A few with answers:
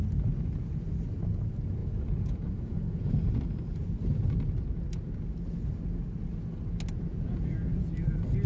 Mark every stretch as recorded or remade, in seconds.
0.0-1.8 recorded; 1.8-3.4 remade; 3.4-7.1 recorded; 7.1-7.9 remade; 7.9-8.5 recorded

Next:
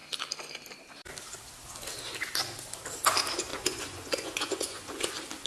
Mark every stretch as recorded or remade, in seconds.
0.0-3.5 recorded; 3.5-5.1 remade; 5.1-5.5 recorded